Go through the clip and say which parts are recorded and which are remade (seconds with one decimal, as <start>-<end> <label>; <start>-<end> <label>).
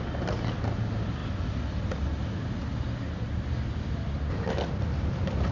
0.0-5.5 recorded